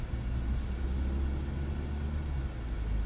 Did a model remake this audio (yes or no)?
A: no